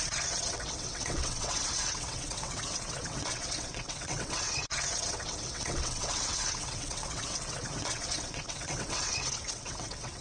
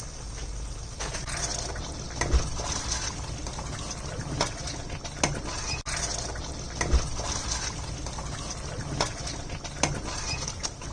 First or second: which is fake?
first